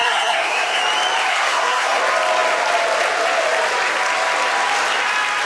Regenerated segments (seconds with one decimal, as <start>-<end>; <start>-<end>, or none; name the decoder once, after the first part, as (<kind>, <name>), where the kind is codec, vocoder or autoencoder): 0.0-0.8 (codec, SNAC); 1.3-2.0